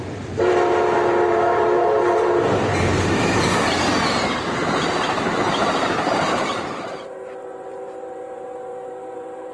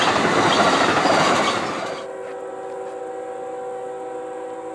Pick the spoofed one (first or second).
first